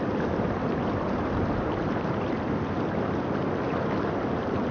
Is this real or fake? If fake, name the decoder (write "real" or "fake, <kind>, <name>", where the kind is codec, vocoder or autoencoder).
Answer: real